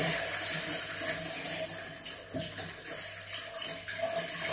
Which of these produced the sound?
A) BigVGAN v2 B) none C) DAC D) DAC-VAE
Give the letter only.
B